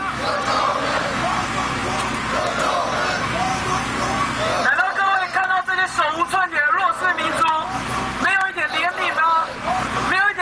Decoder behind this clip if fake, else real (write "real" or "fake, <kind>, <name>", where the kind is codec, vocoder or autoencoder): real